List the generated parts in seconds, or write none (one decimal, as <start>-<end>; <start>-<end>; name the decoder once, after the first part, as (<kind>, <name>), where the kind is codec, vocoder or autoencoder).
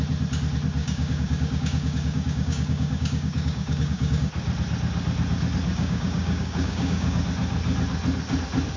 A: 0.8-4.3 (codec, DAC); 5.7-7.2